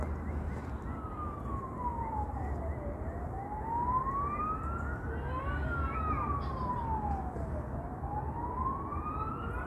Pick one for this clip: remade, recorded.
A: recorded